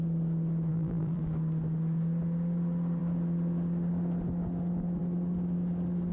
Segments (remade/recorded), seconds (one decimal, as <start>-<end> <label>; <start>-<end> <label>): 0.0-0.7 recorded; 0.7-1.2 remade; 1.2-6.1 recorded